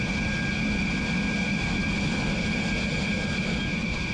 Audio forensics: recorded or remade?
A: recorded